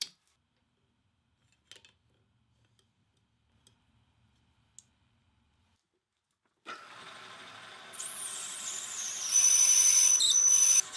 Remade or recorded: recorded